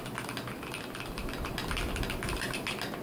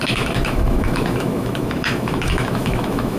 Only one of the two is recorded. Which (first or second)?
first